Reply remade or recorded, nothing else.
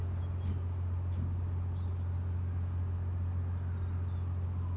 recorded